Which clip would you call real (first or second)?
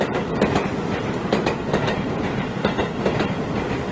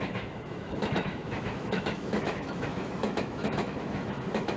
first